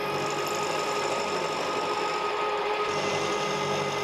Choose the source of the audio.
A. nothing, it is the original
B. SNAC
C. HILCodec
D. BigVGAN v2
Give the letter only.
A